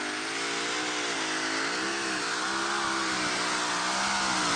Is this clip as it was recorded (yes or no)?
yes